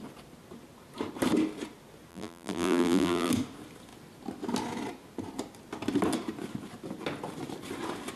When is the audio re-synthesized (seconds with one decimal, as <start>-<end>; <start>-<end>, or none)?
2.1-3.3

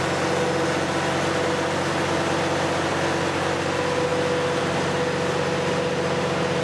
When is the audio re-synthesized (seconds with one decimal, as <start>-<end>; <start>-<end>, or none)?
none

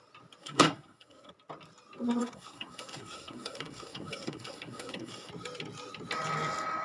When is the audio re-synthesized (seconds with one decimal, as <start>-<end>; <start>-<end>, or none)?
0.4-1.3; 2.2-5.3

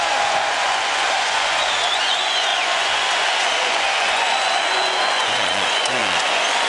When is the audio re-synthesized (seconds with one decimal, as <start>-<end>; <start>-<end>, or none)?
0.0-6.7